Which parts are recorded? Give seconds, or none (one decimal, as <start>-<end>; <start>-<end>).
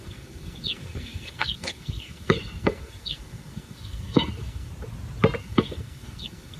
4.7-5.4